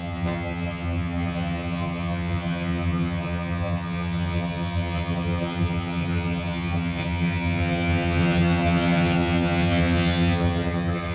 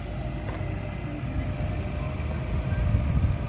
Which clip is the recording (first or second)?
second